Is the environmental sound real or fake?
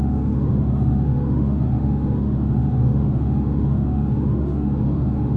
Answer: fake